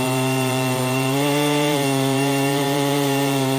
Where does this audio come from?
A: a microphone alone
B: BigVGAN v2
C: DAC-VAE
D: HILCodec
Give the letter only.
B